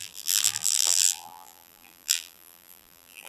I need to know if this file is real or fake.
fake